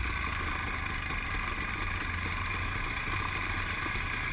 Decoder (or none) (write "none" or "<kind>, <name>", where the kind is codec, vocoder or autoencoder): none